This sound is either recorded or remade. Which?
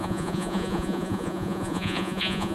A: remade